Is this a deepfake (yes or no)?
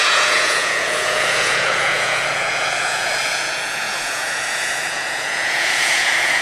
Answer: yes